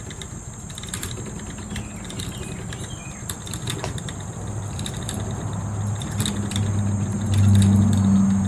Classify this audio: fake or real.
real